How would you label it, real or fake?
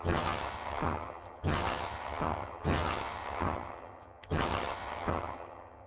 fake